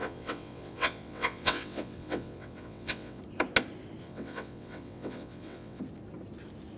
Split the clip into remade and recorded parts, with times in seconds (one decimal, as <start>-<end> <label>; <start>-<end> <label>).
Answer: 0.0-3.2 remade; 3.2-4.0 recorded; 4.0-5.8 remade; 5.8-6.8 recorded